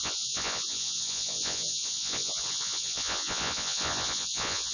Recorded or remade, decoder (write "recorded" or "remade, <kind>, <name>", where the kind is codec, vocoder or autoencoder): remade, vocoder, Vocos